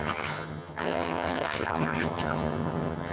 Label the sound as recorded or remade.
remade